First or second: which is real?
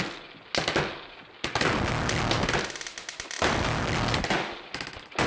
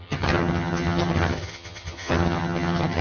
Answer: first